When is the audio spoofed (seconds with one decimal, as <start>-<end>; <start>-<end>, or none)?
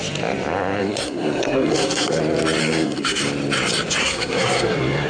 0.8-2.2; 2.6-3.2; 4.0-5.1